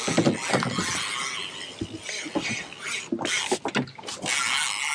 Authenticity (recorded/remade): recorded